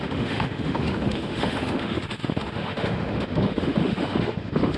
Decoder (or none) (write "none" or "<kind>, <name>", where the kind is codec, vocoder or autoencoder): autoencoder, DAC-VAE